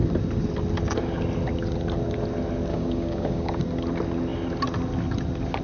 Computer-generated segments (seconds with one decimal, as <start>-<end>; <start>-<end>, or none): 2.7-3.6